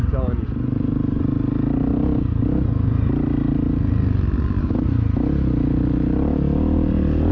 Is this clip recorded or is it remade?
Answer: recorded